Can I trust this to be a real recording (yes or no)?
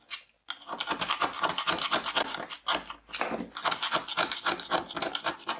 yes